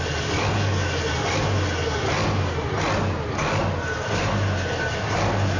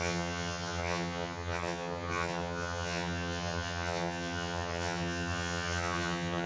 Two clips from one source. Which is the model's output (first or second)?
second